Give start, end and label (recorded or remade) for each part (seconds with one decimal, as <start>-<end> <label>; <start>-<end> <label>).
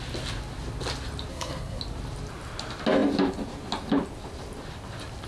0.0-1.3 recorded; 1.3-1.8 remade; 1.8-5.3 recorded